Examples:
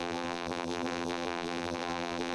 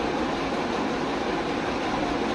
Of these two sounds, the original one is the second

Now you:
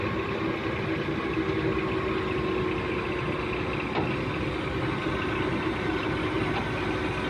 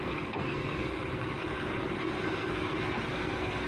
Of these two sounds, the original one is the first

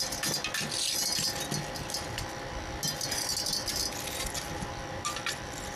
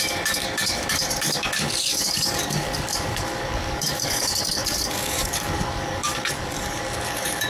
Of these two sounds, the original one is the first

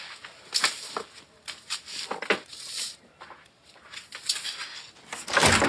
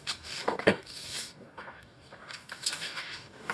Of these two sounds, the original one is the first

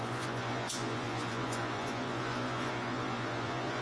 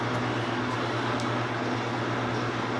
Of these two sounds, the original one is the second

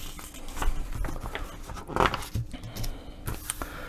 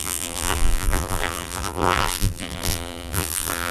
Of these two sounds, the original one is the first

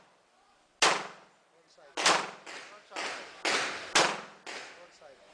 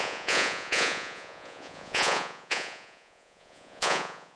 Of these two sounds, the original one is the first